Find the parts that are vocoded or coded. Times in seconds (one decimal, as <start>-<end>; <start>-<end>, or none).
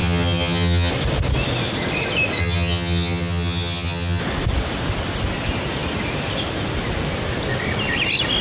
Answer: 0.0-0.9; 2.4-4.2